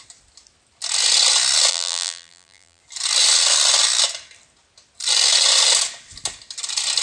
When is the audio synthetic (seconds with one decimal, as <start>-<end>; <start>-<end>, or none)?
1.7-2.8